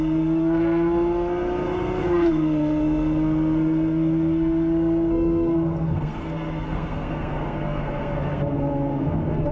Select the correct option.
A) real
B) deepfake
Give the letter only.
B